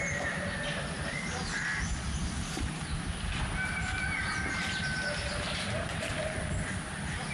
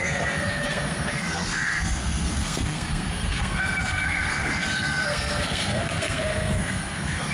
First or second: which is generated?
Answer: second